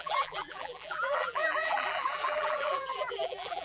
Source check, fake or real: fake